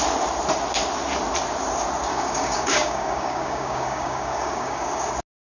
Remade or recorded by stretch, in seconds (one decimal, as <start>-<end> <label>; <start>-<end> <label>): 0.0-2.1 recorded; 2.1-5.1 remade; 5.1-5.5 recorded